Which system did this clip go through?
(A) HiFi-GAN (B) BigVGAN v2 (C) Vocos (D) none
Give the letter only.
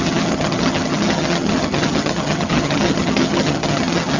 A